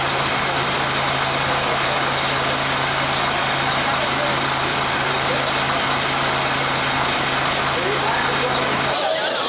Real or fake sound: real